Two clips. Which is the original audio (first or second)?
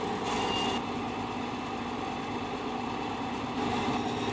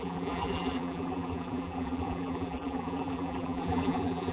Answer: first